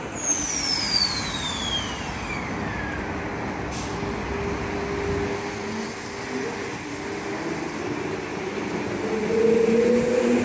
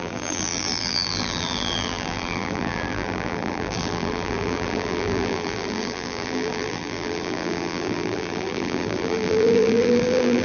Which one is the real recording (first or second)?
first